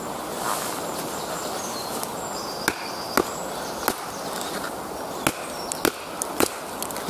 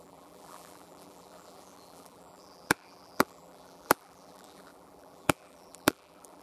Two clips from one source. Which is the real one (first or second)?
first